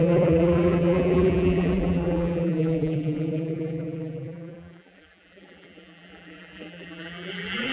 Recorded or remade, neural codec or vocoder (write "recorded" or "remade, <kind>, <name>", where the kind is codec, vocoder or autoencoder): remade, vocoder, BigVGAN v2